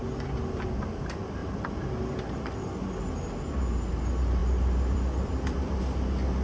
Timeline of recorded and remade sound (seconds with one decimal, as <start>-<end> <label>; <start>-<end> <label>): 0.0-1.4 recorded; 1.4-1.9 remade; 1.9-4.4 recorded; 4.4-5.8 remade; 5.8-6.4 recorded